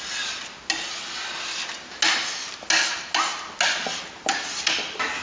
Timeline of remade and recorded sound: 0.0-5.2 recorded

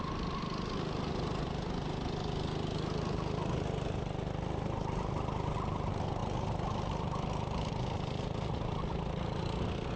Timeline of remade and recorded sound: 0.0-10.0 recorded

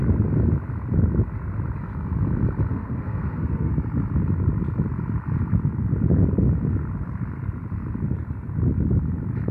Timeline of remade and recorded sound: 0.0-2.7 recorded; 2.7-3.7 remade; 3.7-9.5 recorded

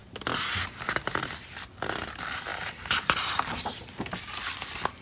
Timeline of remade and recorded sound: 0.0-0.5 remade; 0.5-2.5 recorded; 2.5-4.2 remade; 4.2-5.0 recorded

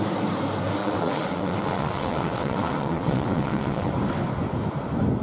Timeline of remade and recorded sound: 0.0-0.8 recorded; 0.8-3.9 remade; 3.9-5.2 recorded

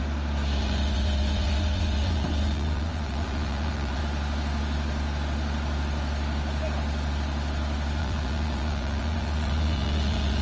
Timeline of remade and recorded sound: 0.0-0.6 recorded; 0.6-4.0 remade; 4.0-8.0 recorded; 8.0-10.4 remade

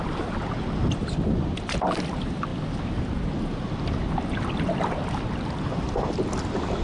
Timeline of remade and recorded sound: 0.0-6.8 recorded